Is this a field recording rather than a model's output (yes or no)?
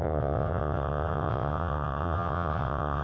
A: no